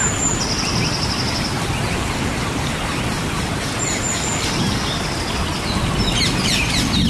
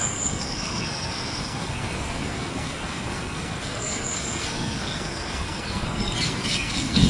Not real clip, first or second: second